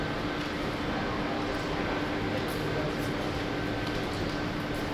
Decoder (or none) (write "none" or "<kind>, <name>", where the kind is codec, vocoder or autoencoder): none